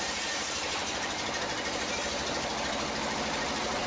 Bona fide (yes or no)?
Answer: yes